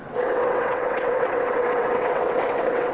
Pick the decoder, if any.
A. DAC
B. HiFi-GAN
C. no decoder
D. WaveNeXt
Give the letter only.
D